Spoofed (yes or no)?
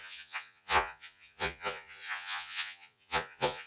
yes